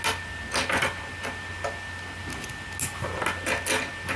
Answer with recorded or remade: recorded